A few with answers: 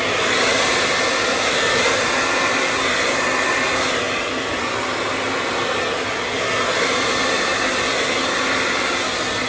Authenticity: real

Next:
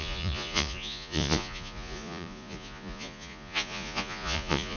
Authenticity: fake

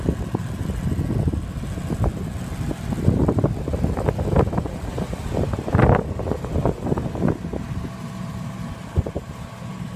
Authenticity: real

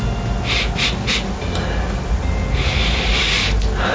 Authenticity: real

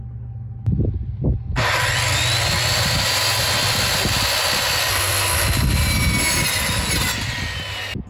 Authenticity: real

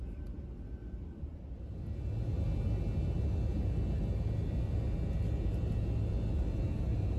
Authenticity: real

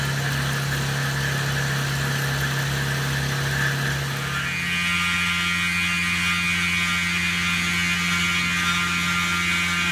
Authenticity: real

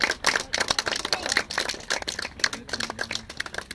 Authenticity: real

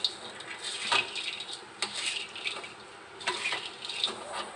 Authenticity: real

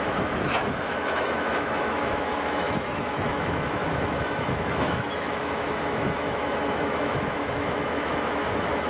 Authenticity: fake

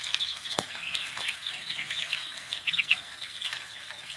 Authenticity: fake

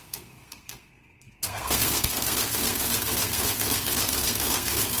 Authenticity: fake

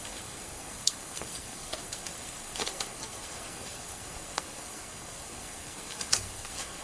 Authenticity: fake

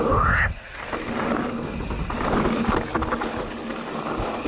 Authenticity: real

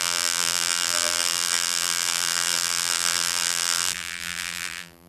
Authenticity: fake